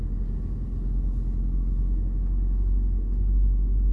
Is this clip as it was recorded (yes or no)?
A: yes